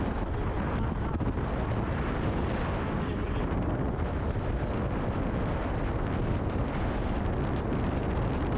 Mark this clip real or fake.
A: real